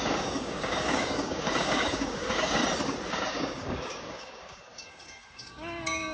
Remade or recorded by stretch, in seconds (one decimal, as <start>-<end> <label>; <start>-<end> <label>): 0.0-2.6 remade; 2.6-3.1 recorded; 3.1-6.1 remade